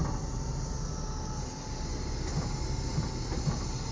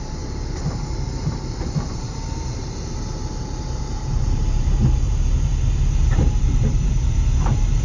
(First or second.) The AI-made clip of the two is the second